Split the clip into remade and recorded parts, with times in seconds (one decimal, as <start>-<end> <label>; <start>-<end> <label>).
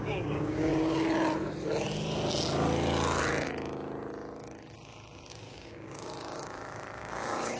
0.0-0.7 remade; 0.7-5.3 recorded; 5.3-7.6 remade